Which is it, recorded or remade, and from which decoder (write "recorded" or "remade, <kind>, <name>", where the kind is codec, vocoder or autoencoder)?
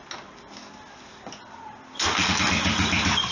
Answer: recorded